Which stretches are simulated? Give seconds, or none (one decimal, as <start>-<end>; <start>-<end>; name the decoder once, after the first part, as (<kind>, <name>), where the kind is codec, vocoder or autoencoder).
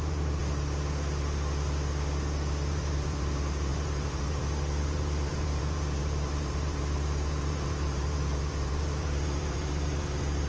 0.0-0.4 (vocoder, BigVGAN v2); 2.7-10.5